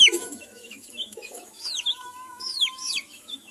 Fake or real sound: fake